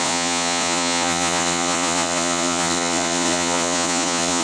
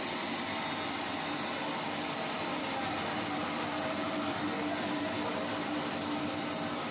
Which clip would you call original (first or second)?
second